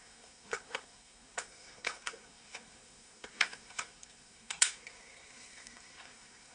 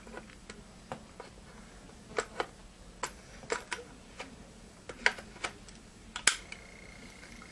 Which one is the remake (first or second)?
first